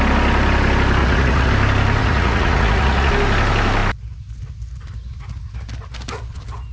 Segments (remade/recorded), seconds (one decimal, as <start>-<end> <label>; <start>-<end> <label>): 0.0-1.0 recorded; 1.0-1.5 remade; 1.5-2.0 recorded; 2.0-3.1 remade; 3.1-6.7 recorded